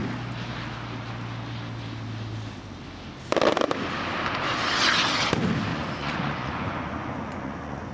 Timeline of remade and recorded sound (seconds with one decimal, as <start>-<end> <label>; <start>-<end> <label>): 0.0-5.7 recorded; 5.7-7.9 remade